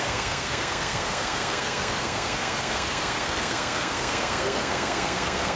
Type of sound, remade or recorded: remade